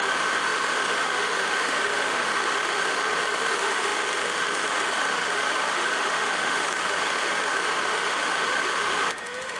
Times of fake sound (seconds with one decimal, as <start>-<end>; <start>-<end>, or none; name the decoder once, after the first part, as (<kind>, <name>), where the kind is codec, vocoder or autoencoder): 0.0-9.6 (autoencoder, DAC-VAE)